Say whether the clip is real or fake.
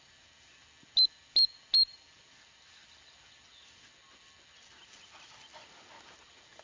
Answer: real